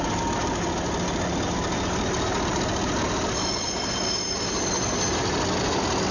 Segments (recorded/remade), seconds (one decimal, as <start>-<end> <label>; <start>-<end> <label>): 0.0-6.1 recorded